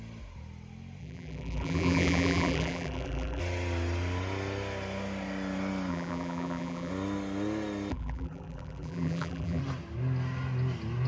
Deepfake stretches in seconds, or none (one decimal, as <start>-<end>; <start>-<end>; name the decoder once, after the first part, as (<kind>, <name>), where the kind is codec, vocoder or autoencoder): 1.0-3.4 (vocoder, BigVGAN v2); 5.9-6.9; 7.9-9.6